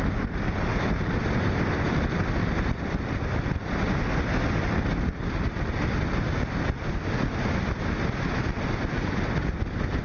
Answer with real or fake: real